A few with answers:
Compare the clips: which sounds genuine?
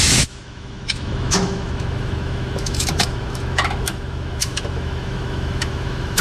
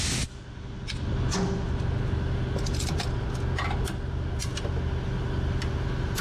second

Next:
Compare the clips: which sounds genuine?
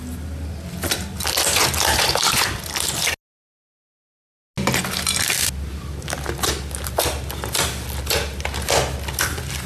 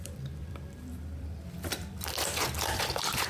first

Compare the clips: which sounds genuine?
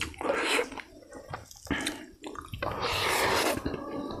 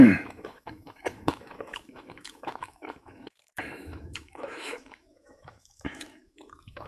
first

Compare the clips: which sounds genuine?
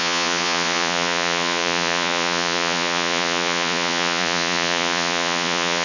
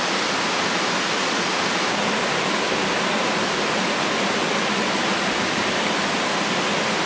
second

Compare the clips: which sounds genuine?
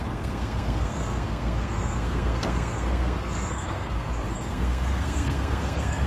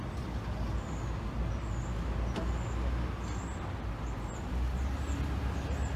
second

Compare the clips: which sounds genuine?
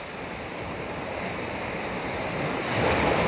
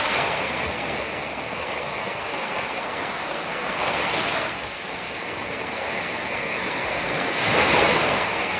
first